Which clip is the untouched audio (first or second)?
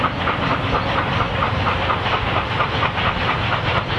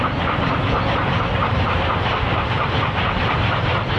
first